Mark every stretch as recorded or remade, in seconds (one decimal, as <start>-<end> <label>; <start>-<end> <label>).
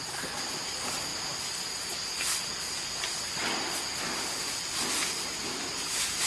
0.0-6.3 recorded